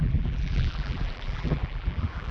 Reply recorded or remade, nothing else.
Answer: remade